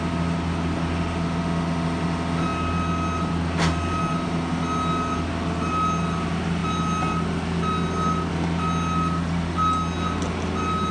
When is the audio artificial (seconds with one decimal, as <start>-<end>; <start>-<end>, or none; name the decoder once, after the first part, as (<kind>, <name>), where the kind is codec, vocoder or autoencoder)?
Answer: none